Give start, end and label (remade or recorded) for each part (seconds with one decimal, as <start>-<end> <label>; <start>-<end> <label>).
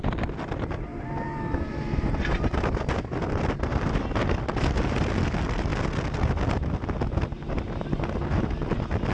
0.0-5.7 remade; 5.7-9.1 recorded